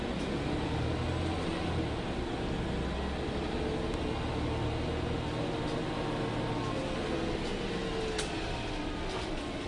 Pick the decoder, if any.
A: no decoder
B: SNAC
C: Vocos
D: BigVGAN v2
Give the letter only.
A